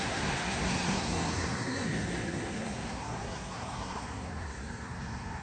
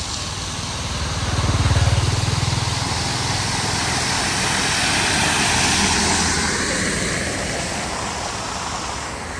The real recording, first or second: second